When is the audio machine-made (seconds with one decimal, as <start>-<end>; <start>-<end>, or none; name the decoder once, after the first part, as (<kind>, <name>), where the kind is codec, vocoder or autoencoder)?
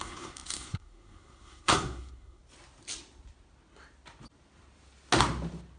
0.0-2.4 (codec, SNAC)